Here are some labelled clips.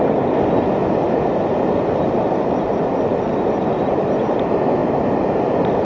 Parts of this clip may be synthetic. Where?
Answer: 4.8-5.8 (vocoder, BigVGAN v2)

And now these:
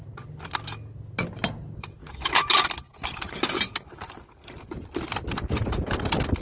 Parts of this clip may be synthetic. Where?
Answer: 2.0-2.5 (autoencoder, DAC-VAE)

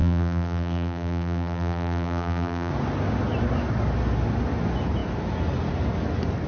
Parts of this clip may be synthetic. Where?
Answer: 0.0-2.7 (vocoder, BigVGAN v2)

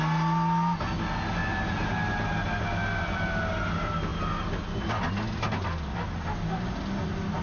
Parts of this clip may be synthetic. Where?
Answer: none

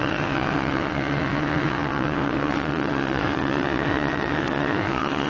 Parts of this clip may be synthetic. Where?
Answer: 0.0-5.3 (vocoder, WaveNeXt)

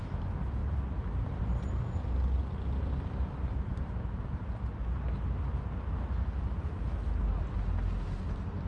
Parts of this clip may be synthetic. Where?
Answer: none